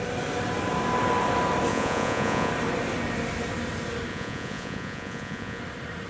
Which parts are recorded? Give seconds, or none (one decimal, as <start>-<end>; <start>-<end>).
0.0-1.7; 2.5-4.1; 5.6-6.1